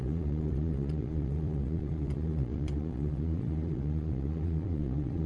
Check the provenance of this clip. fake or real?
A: fake